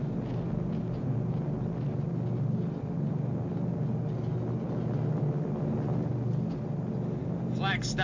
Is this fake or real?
real